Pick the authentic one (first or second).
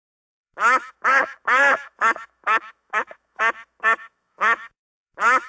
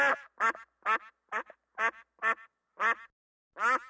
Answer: second